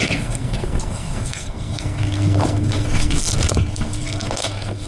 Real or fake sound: fake